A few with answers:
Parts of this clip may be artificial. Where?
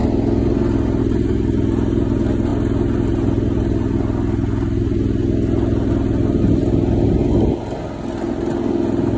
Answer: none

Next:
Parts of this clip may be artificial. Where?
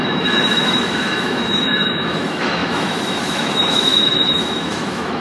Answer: 0.0-5.2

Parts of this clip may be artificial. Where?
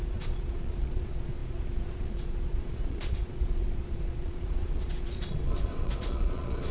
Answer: 0.0-6.7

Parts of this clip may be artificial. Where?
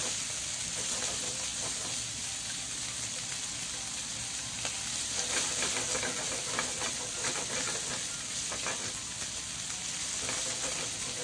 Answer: none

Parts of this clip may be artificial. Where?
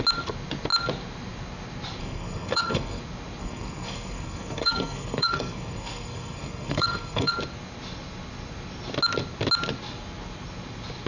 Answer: 2.0-3.0; 3.4-7.3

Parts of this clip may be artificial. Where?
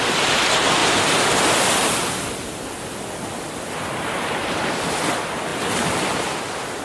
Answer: none